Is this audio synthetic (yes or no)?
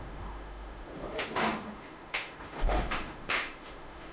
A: yes